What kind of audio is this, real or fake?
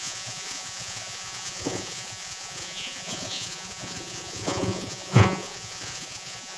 fake